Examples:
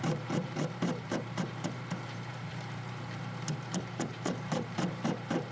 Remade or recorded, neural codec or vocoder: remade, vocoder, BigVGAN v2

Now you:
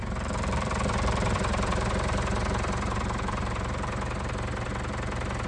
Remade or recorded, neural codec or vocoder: remade, vocoder, BigVGAN v2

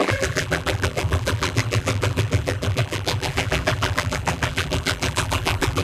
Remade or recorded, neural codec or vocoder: remade, vocoder, BigVGAN v2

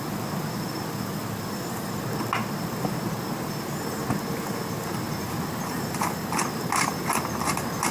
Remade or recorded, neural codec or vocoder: recorded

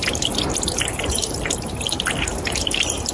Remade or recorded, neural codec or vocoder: recorded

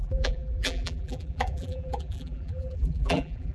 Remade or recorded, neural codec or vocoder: remade, vocoder, BigVGAN v2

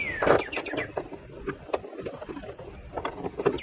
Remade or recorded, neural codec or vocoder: recorded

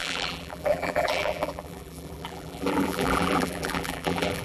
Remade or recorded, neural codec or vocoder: remade, vocoder, BigVGAN v2